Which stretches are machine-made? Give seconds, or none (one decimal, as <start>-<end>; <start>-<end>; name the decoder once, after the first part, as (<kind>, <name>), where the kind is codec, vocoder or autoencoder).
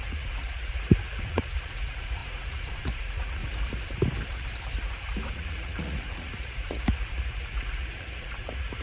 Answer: 0.0-3.4 (vocoder, Vocos); 5.3-8.8